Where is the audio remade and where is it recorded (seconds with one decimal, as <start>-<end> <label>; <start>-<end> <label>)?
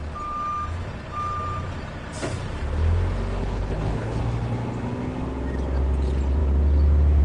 0.0-3.4 recorded; 3.4-4.2 remade; 4.2-7.2 recorded